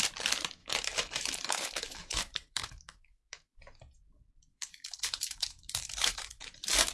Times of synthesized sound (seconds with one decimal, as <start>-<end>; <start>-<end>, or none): 0.6-3.6; 4.5-6.5